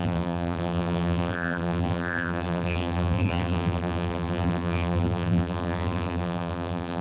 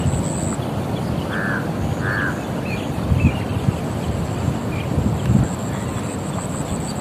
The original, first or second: second